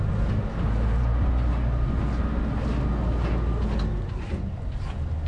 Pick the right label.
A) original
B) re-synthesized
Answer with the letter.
A